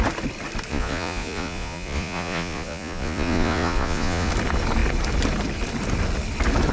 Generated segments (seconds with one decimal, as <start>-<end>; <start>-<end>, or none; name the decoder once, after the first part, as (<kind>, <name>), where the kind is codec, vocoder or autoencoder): 0.7-4.3 (vocoder, Vocos)